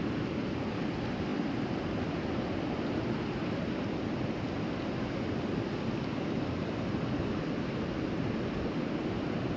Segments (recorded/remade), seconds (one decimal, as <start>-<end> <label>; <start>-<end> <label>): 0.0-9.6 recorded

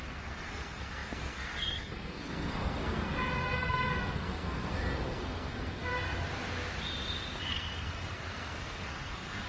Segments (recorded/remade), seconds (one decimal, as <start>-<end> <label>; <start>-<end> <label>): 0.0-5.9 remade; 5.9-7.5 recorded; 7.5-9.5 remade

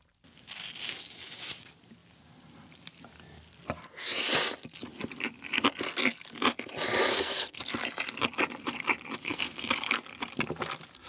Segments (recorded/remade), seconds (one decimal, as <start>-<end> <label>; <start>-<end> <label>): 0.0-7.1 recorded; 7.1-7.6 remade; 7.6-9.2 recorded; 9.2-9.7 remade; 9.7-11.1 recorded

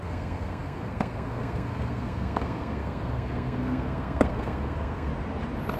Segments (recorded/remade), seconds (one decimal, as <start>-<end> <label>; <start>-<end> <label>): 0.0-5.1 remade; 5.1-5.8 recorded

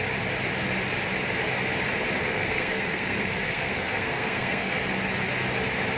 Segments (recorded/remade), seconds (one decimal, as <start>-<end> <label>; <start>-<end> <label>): 0.0-2.2 recorded; 2.2-4.8 remade; 4.8-6.0 recorded

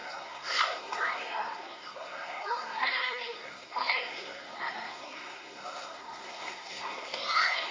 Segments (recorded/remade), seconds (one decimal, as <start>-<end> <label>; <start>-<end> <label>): 0.0-7.7 remade

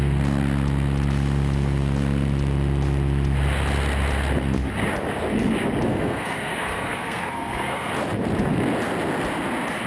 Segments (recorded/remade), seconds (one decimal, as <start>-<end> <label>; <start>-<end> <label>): 0.0-5.9 recorded; 5.9-7.9 remade; 7.9-9.9 recorded

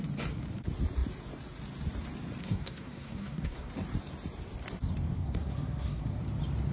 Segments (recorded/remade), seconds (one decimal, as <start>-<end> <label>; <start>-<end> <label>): 0.0-2.4 recorded; 2.4-3.7 remade; 3.7-5.2 recorded; 5.2-6.2 remade; 6.2-6.7 recorded